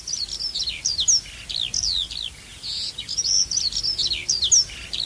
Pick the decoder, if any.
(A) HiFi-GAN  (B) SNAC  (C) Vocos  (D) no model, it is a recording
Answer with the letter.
D